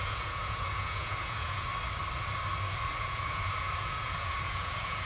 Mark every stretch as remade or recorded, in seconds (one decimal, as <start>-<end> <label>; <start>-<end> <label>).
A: 0.0-1.7 remade; 1.7-3.0 recorded; 3.0-5.1 remade